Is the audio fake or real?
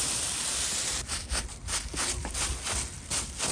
real